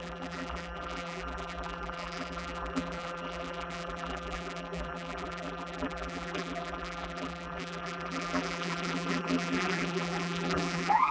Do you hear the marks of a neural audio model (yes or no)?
yes